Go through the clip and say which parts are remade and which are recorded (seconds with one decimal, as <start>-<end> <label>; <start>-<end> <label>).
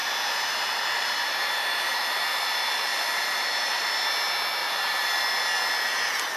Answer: 0.0-3.8 remade; 3.8-4.6 recorded; 4.6-5.3 remade; 5.3-6.4 recorded